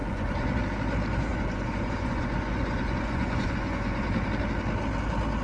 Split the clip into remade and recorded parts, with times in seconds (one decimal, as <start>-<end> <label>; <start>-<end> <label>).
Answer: 0.0-0.6 remade; 0.6-1.3 recorded; 1.3-4.1 remade; 4.1-5.4 recorded